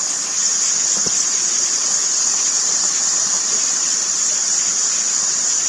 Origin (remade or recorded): recorded